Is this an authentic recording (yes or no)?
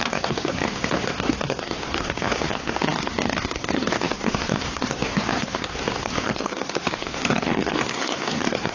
no